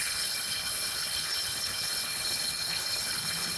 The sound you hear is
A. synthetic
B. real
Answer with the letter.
A